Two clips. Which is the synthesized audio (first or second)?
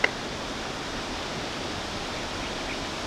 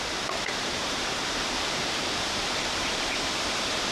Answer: second